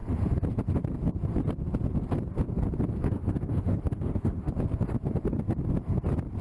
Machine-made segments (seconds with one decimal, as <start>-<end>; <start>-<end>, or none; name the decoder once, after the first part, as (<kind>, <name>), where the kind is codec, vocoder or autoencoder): 3.0-4.5 (autoencoder, DAC-VAE)